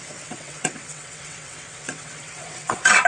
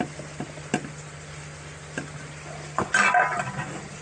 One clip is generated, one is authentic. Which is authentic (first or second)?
second